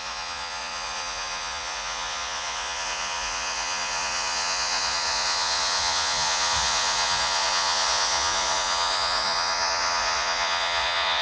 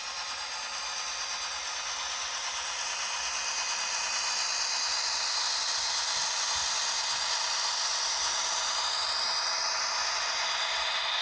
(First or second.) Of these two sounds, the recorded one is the second